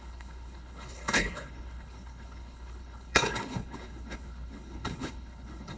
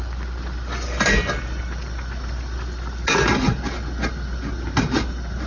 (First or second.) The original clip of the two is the second